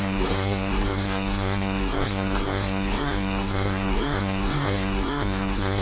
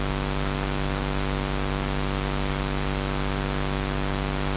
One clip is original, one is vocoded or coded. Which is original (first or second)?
second